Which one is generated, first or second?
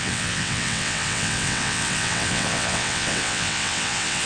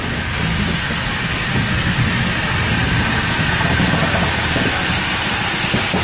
first